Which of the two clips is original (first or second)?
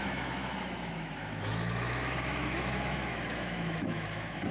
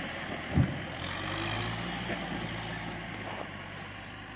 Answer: second